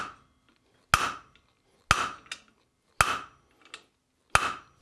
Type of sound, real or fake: real